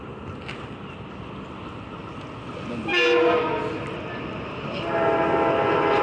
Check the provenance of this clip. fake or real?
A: real